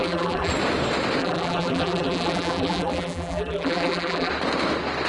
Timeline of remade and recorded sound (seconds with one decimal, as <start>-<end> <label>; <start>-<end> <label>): 0.0-0.5 remade; 0.5-1.2 recorded; 1.2-4.3 remade; 4.3-5.1 recorded